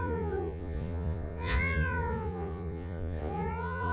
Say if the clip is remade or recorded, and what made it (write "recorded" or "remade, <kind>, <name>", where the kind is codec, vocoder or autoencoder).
remade, vocoder, Vocos